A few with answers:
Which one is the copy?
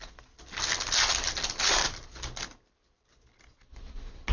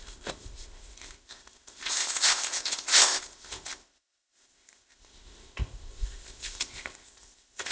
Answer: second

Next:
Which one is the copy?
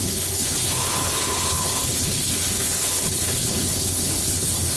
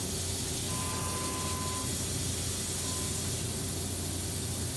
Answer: first